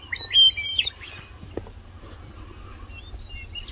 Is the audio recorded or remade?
recorded